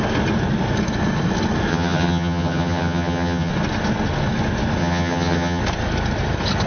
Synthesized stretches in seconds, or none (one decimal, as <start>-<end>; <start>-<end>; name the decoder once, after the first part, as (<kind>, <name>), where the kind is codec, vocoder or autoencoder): 1.7-3.5 (vocoder, HiFi-GAN); 4.8-5.6